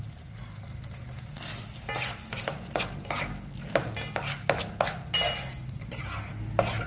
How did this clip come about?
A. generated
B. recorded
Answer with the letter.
B